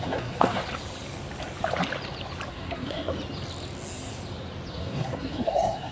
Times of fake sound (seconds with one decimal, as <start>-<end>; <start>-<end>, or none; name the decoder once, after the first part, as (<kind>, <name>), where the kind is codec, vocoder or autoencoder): 0.0-0.6 (codec, SNAC); 2.5-3.1; 4.7-5.9